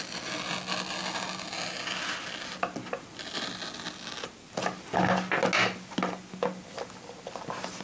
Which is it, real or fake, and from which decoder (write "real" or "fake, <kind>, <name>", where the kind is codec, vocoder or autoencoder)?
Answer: real